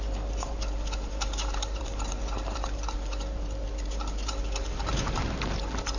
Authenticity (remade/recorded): remade